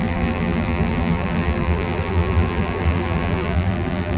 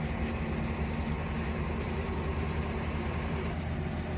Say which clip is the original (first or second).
second